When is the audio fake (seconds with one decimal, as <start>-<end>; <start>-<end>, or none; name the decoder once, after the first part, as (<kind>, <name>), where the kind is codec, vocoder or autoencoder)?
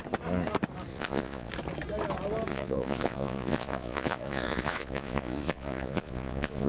0.9-1.5 (vocoder, Vocos); 2.5-6.7